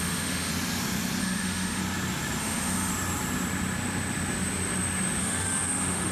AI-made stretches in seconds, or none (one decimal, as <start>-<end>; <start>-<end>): 0.0-0.5; 1.2-1.8; 2.4-2.9; 5.2-6.1

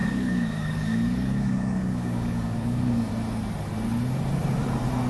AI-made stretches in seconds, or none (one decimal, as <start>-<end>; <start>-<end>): 0.0-3.1

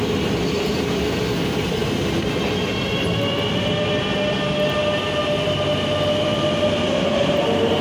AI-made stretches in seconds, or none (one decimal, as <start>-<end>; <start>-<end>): none

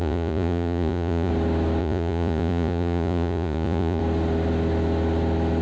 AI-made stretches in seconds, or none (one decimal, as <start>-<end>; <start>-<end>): 0.0-1.3; 1.8-4.0

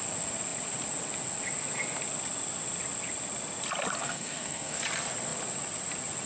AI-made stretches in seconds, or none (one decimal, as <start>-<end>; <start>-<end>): 4.0-4.8

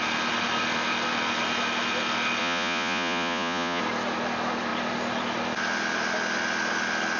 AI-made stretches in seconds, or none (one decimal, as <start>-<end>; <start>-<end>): 2.4-3.8

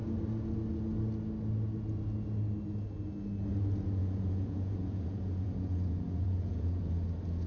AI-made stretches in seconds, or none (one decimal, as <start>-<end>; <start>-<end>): 4.0-6.9